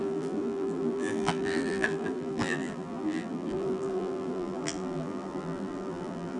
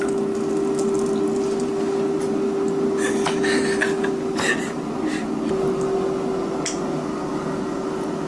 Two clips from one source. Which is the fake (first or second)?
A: first